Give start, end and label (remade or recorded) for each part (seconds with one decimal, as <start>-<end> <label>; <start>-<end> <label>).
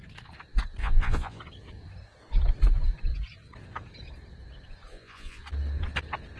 0.0-0.8 recorded; 0.8-1.4 remade; 1.4-4.9 recorded; 4.9-5.4 remade; 5.4-6.4 recorded